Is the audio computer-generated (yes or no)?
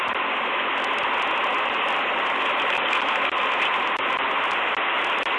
no